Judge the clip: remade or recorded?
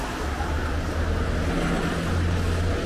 recorded